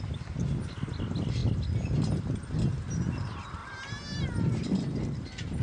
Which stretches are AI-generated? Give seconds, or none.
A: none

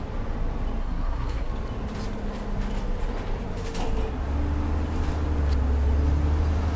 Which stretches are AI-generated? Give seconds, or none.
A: 0.8-1.5 (codec, SNAC)

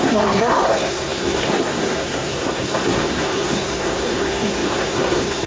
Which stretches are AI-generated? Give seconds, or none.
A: 0.0-5.5 (codec, SNAC)

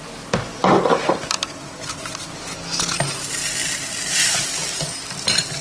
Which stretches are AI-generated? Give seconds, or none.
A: none